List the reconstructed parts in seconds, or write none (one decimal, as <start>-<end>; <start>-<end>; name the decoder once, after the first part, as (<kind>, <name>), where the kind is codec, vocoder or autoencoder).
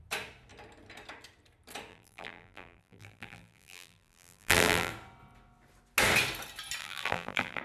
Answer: 1.9-4.9 (vocoder, BigVGAN v2); 6.8-7.6